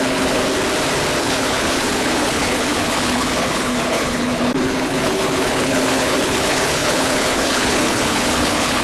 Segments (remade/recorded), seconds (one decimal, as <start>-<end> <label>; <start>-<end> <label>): 0.0-0.4 remade; 0.4-1.2 recorded; 1.2-8.8 remade